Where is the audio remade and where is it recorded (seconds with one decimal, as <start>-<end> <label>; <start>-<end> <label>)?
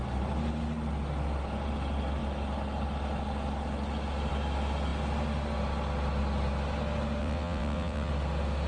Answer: 0.0-7.2 recorded; 7.2-8.1 remade; 8.1-8.7 recorded